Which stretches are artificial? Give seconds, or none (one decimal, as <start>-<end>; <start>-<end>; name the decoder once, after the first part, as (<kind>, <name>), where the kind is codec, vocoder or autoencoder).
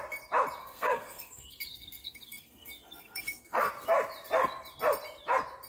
0.6-3.7 (codec, SNAC)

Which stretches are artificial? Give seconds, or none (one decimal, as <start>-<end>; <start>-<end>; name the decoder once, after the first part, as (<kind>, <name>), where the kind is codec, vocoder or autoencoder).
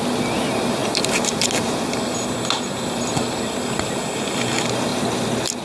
none